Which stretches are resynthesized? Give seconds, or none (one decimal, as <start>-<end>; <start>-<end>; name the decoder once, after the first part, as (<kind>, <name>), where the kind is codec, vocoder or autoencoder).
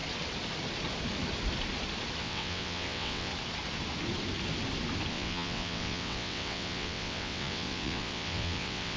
2.2-3.3 (vocoder, WaveNeXt); 5.1-9.0